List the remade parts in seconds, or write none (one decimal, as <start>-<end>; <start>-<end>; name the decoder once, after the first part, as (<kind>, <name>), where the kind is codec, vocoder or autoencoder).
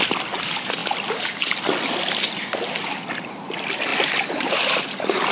none